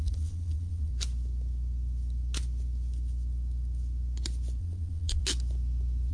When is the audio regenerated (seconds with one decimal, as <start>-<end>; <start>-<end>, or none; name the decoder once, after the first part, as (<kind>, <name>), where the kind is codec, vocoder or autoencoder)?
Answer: 0.0-0.9 (vocoder, Vocos); 4.6-5.2